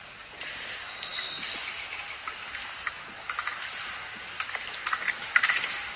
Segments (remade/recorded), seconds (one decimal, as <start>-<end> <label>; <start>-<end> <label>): 0.0-6.0 recorded